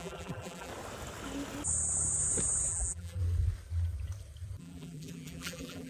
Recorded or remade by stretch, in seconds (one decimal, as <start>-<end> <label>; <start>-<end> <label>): 0.0-0.7 remade; 0.7-2.7 recorded; 2.7-3.2 remade; 3.2-4.6 recorded; 4.6-5.9 remade